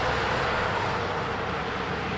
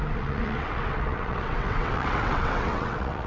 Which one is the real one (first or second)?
first